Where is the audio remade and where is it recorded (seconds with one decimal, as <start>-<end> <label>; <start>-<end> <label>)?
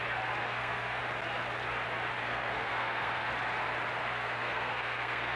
0.0-0.4 recorded; 0.4-1.0 remade; 1.0-2.2 recorded; 2.2-3.3 remade; 3.3-4.0 recorded; 4.0-5.4 remade